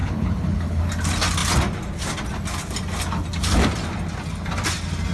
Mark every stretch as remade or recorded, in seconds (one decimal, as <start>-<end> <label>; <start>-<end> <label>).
0.0-0.8 remade; 0.8-5.1 recorded